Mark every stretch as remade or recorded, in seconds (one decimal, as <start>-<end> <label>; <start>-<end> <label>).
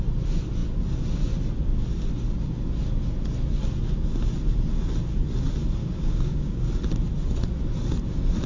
0.0-5.8 recorded; 5.8-6.7 remade; 6.7-8.5 recorded